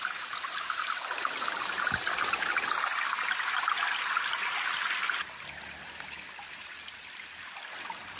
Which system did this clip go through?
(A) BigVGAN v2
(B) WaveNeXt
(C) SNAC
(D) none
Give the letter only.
D